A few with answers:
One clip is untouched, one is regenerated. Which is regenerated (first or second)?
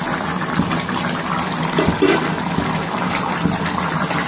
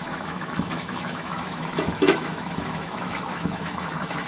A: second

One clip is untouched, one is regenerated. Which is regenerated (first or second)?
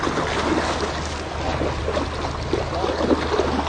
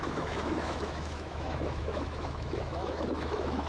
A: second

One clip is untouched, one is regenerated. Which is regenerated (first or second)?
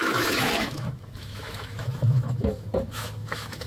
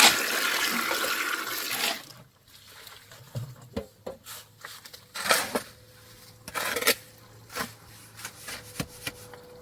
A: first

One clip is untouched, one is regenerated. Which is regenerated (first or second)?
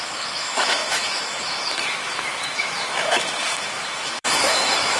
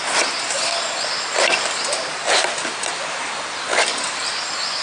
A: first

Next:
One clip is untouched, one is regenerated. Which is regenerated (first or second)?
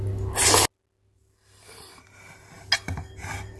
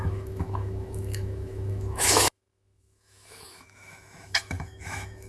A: second